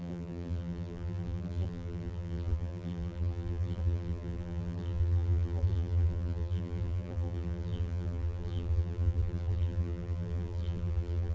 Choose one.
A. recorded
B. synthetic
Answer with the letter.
B